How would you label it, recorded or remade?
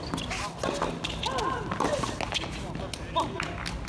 recorded